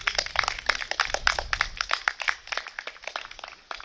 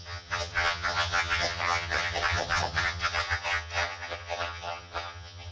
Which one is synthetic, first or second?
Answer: second